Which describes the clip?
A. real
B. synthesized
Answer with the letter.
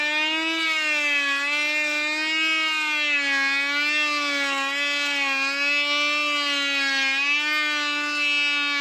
A